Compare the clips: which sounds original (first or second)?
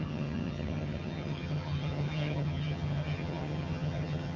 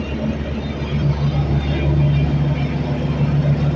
second